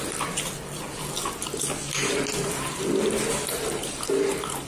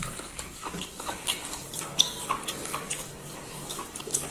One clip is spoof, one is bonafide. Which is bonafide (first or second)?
first